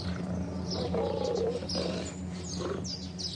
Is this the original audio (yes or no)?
yes